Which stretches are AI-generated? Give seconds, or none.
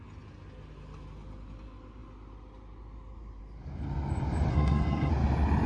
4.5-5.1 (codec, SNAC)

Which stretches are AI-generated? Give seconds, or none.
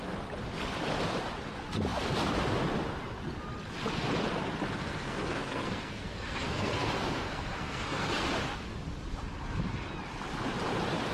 4.8-8.3 (codec, SNAC)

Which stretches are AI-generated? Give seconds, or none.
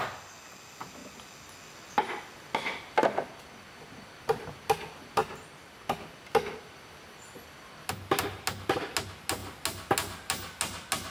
none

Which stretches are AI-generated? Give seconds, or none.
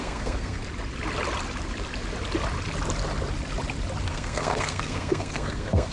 0.0-0.6 (codec, SNAC); 4.1-5.9